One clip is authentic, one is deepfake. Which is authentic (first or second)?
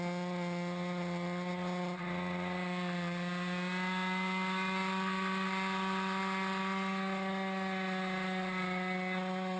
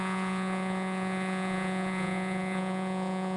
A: first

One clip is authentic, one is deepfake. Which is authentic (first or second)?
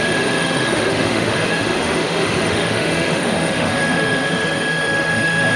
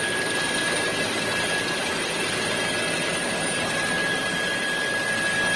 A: second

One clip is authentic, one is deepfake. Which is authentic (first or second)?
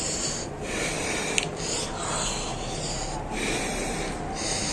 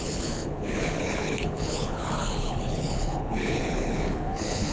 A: first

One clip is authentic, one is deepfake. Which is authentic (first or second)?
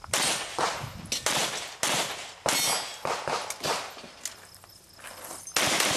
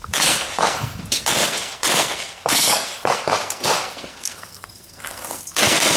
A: first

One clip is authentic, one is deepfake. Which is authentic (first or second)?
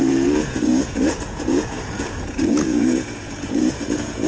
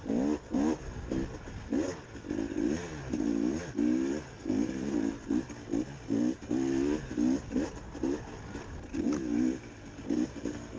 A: second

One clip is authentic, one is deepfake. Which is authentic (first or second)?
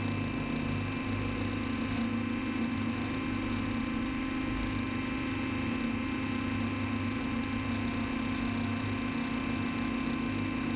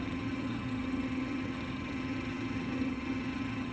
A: first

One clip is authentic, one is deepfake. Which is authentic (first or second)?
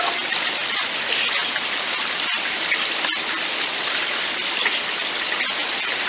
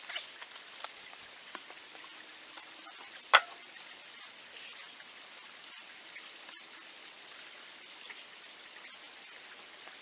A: second